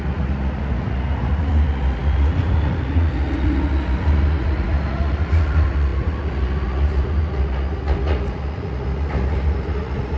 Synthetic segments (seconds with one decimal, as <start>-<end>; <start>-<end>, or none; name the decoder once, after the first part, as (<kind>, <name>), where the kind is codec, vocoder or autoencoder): 0.0-10.2 (vocoder, Vocos)